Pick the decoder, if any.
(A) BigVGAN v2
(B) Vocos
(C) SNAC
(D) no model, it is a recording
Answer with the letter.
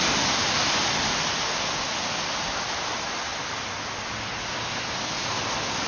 D